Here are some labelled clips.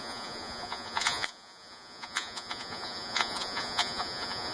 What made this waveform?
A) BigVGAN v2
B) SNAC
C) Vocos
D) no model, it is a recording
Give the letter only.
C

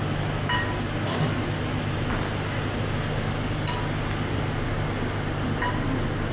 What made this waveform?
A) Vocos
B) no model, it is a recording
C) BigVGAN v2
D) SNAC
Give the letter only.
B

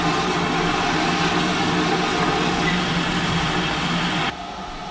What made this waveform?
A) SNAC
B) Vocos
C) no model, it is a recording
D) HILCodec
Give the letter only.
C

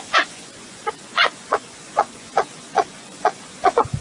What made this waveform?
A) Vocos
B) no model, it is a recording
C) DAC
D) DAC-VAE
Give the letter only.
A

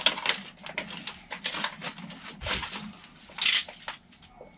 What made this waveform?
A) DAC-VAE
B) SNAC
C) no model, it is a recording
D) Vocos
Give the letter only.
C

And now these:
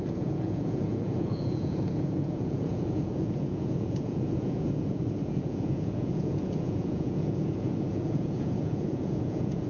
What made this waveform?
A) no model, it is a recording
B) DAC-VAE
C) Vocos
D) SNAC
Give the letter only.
C